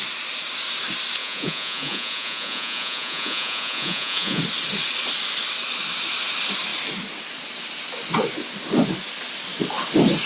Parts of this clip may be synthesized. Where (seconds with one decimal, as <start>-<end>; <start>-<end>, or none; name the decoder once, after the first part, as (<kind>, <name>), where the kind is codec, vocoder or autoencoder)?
1.2-4.4 (vocoder, Vocos)